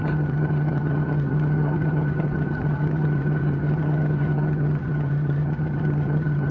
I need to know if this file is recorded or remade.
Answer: remade